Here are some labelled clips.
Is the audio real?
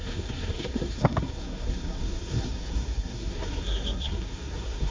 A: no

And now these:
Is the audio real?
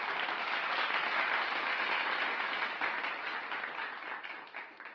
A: yes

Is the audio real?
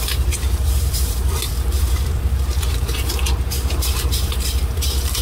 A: no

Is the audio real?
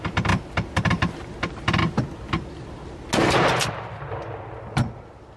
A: yes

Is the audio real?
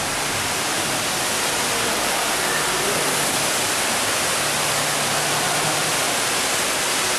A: yes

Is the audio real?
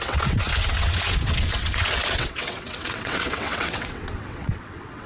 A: no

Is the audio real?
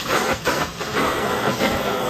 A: no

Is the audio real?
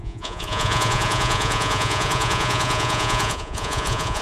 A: no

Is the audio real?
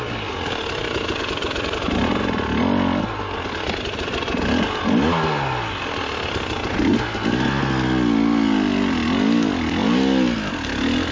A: yes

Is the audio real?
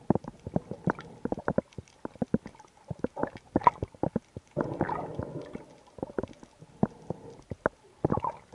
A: yes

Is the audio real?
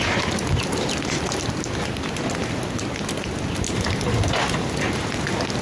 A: yes